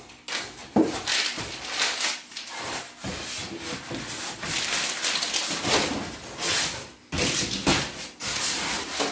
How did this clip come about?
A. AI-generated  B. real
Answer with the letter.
B